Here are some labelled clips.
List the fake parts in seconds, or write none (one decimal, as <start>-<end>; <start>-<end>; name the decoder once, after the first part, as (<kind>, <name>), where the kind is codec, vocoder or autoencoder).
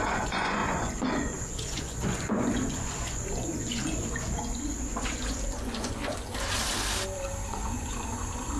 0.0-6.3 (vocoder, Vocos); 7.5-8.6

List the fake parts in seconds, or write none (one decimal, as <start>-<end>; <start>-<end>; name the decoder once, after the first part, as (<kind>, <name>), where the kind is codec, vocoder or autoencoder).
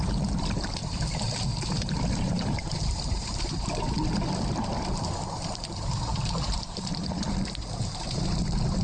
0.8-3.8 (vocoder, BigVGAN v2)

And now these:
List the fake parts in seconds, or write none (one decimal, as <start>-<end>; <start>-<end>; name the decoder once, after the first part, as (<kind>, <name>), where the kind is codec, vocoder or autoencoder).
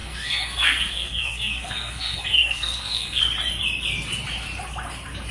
0.0-3.2 (codec, SNAC)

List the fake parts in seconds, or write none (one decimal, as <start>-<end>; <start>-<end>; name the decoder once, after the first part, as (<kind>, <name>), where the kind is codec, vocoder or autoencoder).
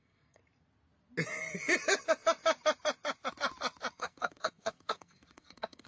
0.0-0.4 (codec, SNAC); 3.9-5.9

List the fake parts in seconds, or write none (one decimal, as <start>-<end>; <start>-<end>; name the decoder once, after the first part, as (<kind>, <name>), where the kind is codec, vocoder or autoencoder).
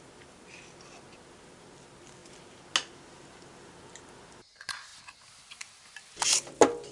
none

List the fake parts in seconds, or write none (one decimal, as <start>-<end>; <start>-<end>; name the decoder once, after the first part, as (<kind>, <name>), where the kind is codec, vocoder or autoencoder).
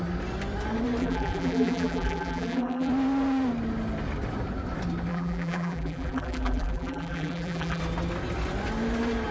1.0-2.9 (vocoder, BigVGAN v2); 5.1-7.8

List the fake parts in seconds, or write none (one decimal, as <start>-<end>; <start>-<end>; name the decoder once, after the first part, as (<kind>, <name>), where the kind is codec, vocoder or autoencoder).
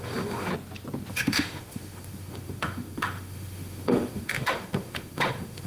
0.0-0.5 (autoencoder, DAC-VAE); 1.1-5.7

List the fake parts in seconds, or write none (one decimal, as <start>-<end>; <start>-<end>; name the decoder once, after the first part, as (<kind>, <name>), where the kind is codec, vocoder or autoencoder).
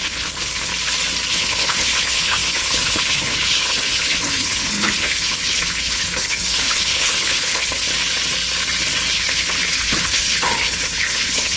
0.0-0.7 (codec, HILCodec); 1.3-7.9; 9.1-11.6